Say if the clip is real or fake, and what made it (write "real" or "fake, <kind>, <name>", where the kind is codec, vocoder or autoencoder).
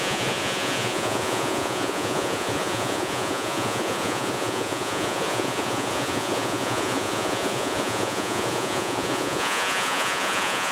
fake, vocoder, Vocos